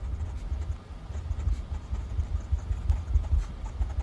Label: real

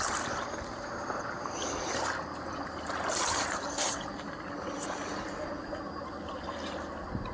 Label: real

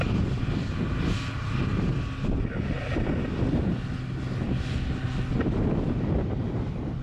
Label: real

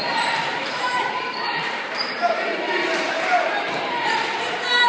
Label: fake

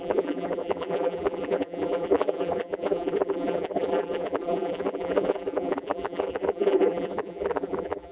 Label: fake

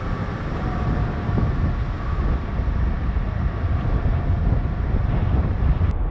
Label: real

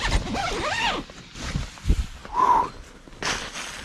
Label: real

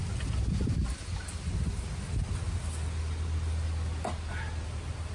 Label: real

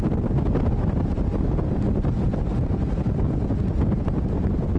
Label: real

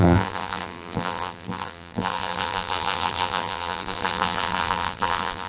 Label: fake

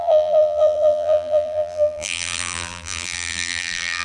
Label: fake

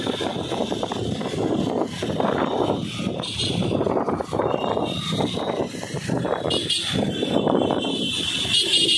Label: fake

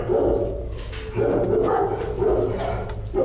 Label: real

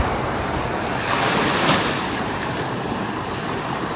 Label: fake